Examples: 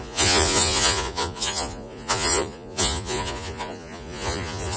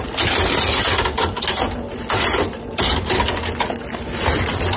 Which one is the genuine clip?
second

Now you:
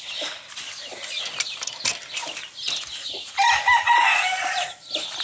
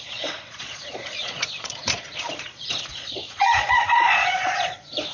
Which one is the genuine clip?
first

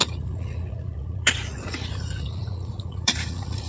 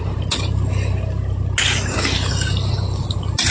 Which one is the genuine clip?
second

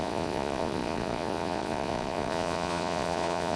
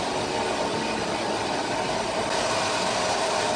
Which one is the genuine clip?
second